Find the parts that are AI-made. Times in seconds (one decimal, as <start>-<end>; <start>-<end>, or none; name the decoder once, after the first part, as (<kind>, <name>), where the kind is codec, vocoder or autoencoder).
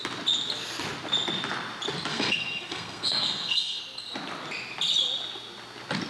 2.1-3.8 (codec, SNAC)